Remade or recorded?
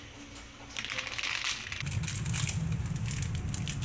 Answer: recorded